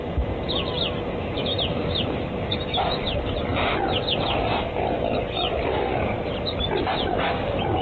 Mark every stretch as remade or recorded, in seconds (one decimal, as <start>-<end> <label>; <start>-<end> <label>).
0.0-3.5 remade; 3.5-6.0 recorded; 6.0-7.8 remade